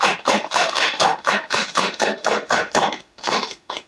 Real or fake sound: fake